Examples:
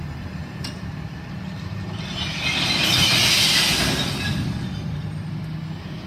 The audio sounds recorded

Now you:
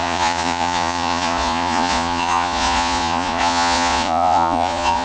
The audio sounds remade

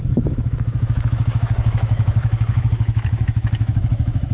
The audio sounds remade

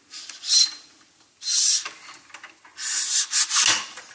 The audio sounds recorded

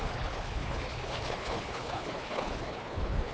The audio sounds remade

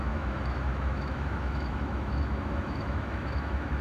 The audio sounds remade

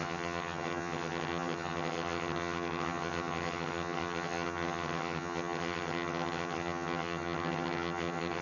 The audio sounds remade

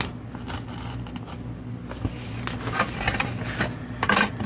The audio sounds recorded